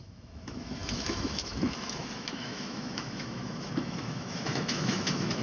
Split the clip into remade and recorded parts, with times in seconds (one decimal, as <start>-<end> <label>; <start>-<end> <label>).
0.0-5.4 remade